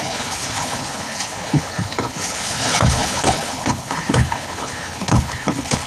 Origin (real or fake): fake